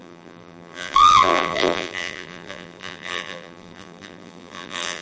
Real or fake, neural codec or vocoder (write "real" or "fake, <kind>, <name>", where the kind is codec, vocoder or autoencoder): fake, vocoder, BigVGAN v2